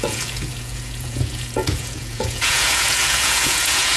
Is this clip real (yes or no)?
no